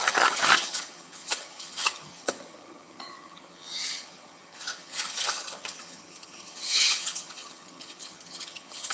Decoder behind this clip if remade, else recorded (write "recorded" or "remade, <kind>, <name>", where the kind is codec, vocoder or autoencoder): remade, vocoder, HiFi-GAN